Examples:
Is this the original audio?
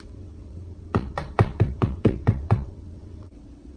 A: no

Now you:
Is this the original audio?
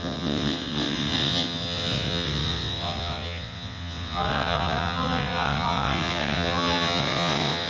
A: no